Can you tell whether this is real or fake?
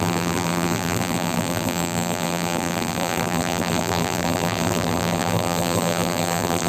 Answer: fake